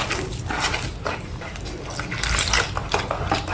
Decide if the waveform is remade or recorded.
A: recorded